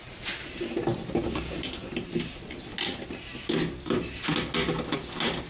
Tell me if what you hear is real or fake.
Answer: real